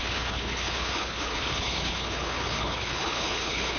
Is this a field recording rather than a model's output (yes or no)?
no